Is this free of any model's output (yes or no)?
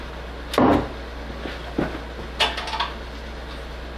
yes